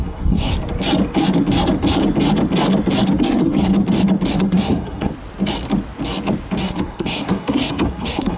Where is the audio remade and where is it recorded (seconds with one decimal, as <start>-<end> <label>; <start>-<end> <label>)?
0.0-0.5 remade; 0.5-3.2 recorded; 3.2-3.7 remade; 3.7-4.3 recorded; 4.3-5.1 remade; 5.1-6.6 recorded; 6.6-8.4 remade